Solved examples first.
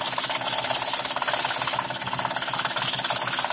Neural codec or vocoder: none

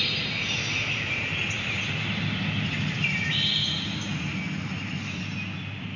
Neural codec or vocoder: none